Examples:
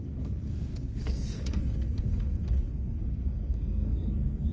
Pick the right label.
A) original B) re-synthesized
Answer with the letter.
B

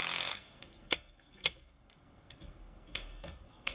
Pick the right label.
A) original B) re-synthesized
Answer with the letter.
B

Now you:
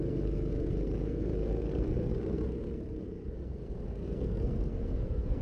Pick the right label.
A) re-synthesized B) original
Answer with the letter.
A